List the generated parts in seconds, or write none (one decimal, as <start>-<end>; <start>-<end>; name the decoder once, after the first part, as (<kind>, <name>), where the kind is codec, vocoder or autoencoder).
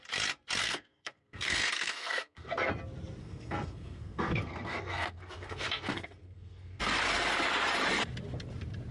0.6-2.7 (codec, SNAC); 3.2-6.8